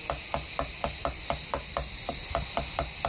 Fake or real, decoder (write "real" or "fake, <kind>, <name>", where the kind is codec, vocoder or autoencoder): real